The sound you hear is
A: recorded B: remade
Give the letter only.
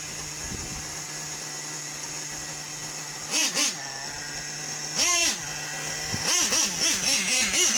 A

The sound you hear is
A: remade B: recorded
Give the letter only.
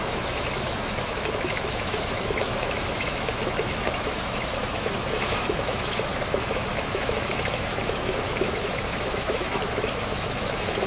A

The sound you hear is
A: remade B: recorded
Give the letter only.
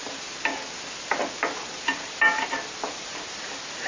B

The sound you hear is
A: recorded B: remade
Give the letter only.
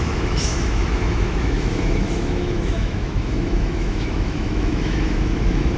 B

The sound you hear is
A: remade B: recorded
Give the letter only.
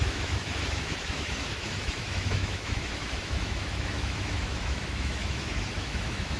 A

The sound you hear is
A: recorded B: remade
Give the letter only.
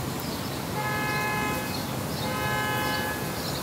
A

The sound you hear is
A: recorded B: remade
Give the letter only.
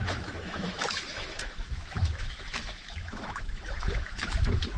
B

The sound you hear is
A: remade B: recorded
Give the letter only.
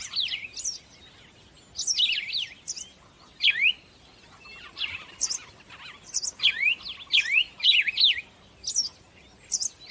B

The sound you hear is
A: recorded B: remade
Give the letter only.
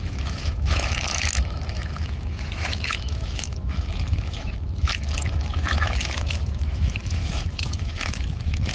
B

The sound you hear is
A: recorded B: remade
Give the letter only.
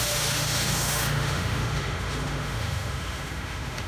B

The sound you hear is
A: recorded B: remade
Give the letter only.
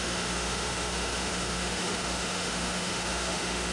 B